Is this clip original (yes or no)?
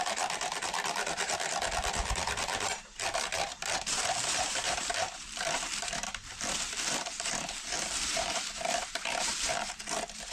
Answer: no